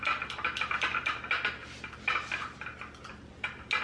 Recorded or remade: recorded